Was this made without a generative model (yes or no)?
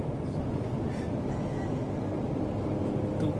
yes